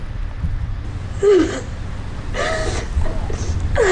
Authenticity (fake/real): real